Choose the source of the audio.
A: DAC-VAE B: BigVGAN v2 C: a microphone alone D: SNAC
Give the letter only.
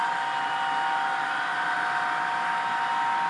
C